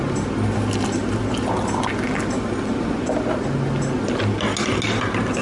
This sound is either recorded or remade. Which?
recorded